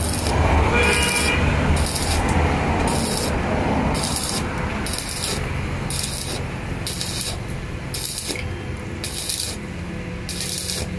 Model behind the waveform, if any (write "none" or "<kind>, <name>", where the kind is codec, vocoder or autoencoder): none